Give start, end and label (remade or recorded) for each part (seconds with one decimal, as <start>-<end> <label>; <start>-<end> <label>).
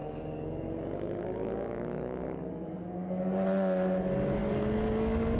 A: 0.0-3.2 remade; 3.2-4.4 recorded; 4.4-5.4 remade